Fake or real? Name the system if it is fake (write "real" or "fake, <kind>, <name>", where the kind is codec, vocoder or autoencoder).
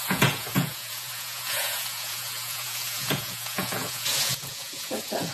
fake, vocoder, Vocos